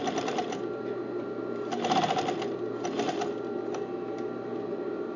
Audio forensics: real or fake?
real